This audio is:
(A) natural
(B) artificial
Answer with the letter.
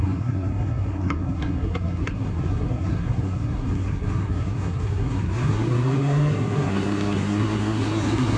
B